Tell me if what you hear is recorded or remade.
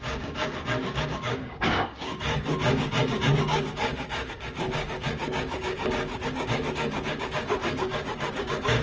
remade